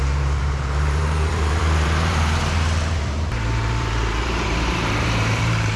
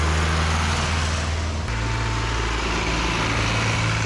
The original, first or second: second